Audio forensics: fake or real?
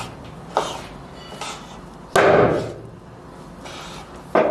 real